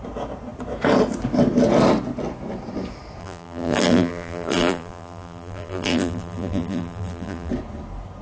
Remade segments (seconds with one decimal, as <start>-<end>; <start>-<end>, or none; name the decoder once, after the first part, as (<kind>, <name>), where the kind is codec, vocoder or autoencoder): 3.2-7.5 (vocoder, BigVGAN v2)